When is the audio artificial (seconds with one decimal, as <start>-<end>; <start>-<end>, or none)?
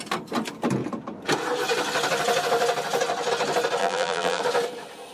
3.8-4.4